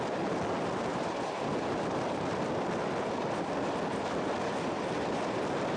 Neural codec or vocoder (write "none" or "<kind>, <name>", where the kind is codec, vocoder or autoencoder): none